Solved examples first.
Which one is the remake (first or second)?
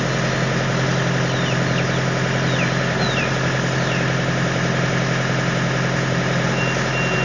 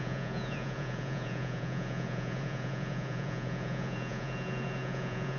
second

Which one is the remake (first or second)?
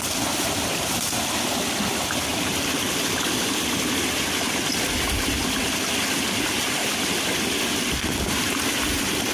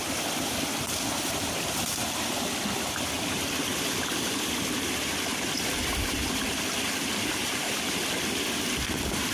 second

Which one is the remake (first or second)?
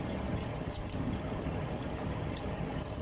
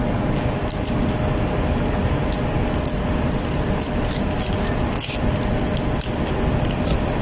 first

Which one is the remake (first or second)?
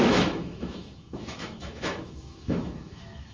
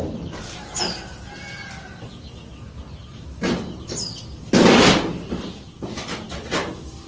first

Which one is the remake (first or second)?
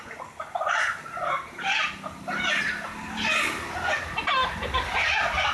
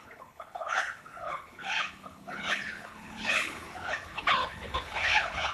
second